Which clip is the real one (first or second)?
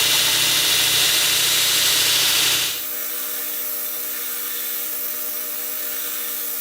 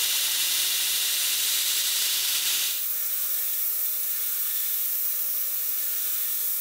first